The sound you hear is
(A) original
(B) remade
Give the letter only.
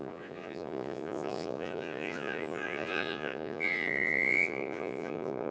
B